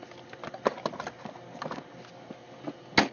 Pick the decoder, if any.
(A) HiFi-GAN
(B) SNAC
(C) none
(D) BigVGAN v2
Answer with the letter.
C